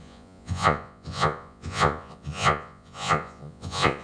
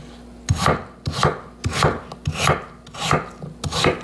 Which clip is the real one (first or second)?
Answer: second